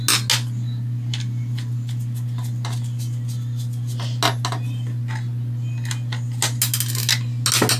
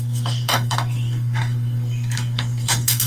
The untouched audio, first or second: first